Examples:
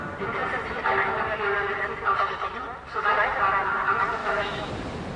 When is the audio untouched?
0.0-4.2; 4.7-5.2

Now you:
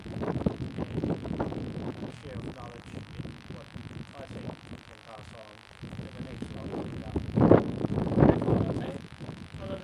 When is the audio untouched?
2.2-3.3; 3.8-6.3

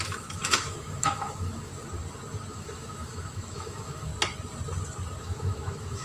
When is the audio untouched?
1.7-2.5; 4.1-5.2